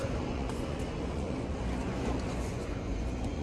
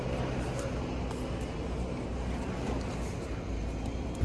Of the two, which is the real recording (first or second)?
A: second